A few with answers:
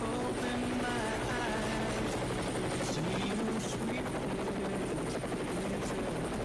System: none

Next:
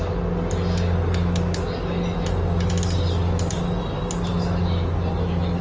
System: none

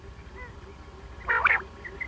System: none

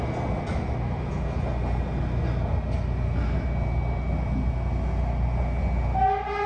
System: none